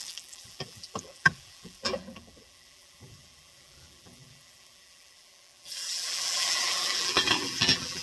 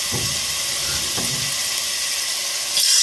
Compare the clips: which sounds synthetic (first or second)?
first